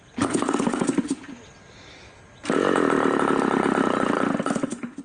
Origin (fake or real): real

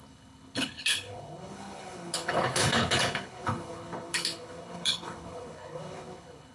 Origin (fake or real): fake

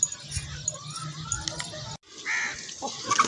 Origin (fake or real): real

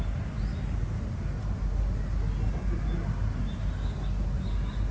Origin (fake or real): real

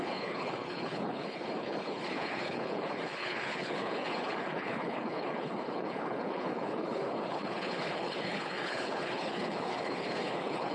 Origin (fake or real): fake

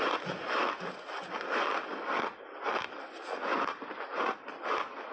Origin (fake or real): real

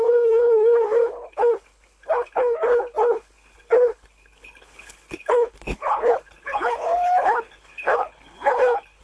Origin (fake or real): fake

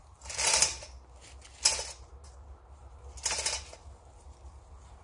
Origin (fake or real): real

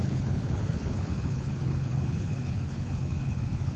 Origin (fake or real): fake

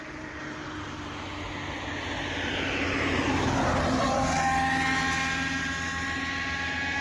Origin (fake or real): real